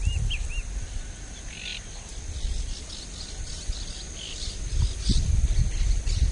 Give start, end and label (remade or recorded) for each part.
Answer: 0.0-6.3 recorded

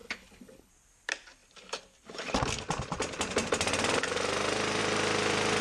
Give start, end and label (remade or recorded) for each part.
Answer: 0.0-0.7 remade; 0.7-5.6 recorded

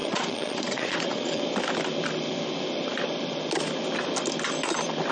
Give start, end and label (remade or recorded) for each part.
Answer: 0.0-1.4 remade; 1.4-5.1 recorded

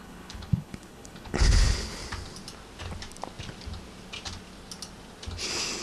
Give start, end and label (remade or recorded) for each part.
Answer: 0.0-2.0 remade; 2.0-5.8 recorded